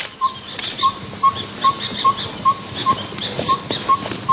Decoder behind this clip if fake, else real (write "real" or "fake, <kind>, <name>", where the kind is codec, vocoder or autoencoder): real